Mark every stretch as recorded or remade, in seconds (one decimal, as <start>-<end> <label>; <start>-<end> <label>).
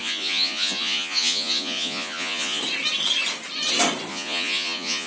0.0-2.6 remade; 2.6-4.1 recorded; 4.1-5.1 remade